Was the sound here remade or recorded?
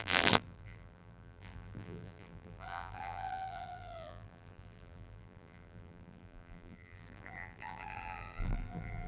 remade